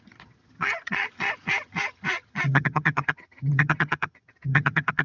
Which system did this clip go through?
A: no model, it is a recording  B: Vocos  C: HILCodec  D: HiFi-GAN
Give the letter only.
D